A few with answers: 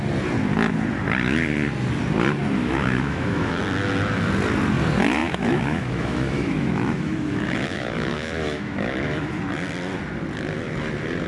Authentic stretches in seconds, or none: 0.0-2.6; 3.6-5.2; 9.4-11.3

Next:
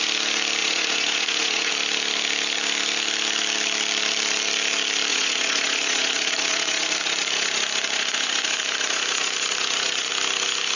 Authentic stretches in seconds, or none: 0.0-0.6; 1.7-5.1; 10.1-10.8